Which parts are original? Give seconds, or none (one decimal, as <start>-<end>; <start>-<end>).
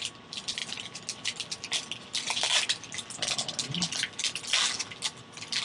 0.0-5.6